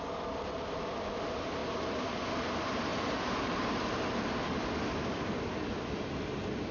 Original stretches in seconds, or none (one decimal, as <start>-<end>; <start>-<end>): 0.0-6.7